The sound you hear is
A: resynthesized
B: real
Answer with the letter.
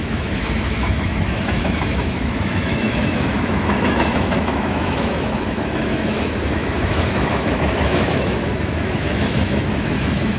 A